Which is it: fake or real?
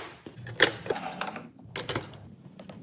real